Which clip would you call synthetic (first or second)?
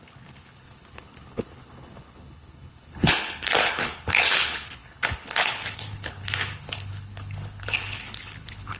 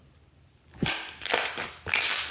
first